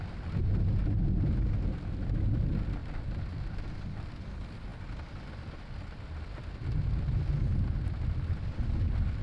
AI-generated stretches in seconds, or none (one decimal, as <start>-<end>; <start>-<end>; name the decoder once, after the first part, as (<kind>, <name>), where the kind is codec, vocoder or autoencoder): 2.8-4.1 (vocoder, BigVGAN v2); 4.7-6.2